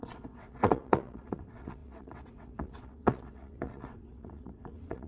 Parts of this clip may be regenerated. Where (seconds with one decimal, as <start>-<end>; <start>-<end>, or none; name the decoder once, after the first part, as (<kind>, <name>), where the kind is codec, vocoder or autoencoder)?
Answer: 0.0-5.1 (vocoder, WaveNeXt)